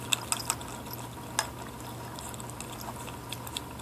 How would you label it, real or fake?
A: real